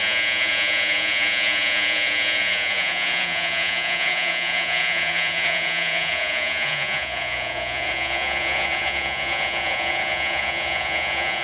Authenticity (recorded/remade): remade